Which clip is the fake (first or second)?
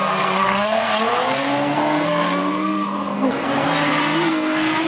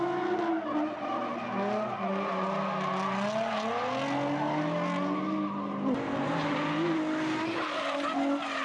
first